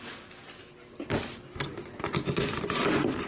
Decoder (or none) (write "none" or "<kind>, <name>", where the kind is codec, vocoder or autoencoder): none